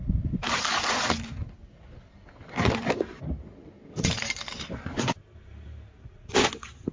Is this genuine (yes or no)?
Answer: yes